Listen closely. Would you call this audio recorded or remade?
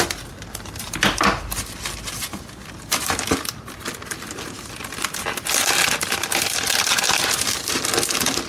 recorded